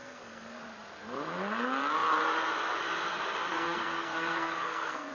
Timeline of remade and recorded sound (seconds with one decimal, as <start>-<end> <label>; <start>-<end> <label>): 0.0-0.6 remade; 0.6-3.5 recorded; 3.5-5.1 remade